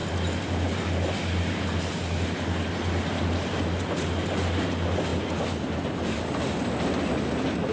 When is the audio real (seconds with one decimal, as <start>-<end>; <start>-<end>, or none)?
0.0-7.7